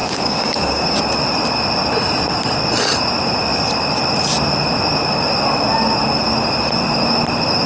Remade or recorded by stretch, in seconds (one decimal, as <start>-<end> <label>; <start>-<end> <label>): 0.0-1.0 remade; 1.0-7.7 recorded